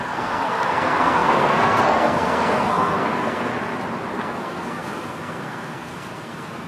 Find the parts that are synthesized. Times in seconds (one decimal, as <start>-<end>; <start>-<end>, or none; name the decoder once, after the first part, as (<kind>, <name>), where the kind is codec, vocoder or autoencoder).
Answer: 0.0-3.5 (codec, SNAC); 4.1-6.7